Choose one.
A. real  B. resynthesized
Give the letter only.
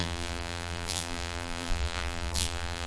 B